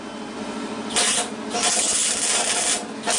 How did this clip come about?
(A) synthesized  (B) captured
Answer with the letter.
B